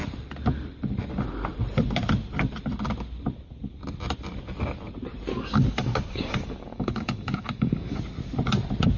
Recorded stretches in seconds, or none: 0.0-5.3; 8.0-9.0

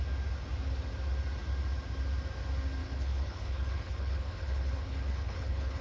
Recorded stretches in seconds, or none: 0.0-2.8

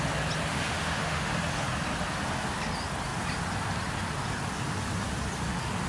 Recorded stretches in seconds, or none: 0.0-0.5; 1.3-5.9

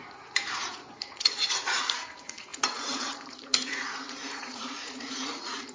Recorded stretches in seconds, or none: none

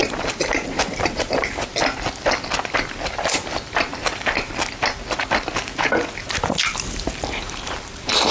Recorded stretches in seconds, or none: 1.7-6.3

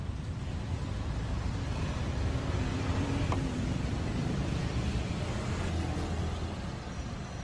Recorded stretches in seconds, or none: 0.0-2.7; 4.6-7.4

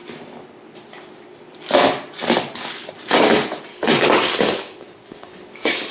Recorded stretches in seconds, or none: 0.0-3.7

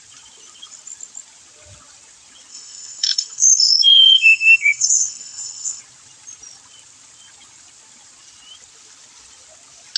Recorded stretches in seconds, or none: 0.0-2.5; 5.8-10.0